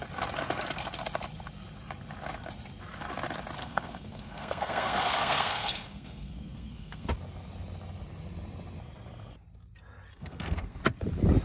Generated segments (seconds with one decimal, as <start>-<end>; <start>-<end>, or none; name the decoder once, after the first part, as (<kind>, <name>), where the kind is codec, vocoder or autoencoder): 3.6-7.1 (codec, SNAC); 10.1-10.8